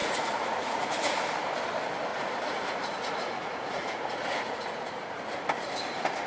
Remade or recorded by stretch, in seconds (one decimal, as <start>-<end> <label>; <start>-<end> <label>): 0.0-1.2 remade; 1.2-2.1 recorded; 2.1-5.2 remade; 5.2-6.3 recorded